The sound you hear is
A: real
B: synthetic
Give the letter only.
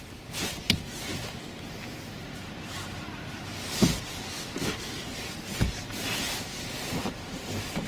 A